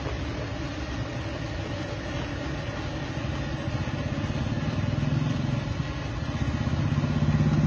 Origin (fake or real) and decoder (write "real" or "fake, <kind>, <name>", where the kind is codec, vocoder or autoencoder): real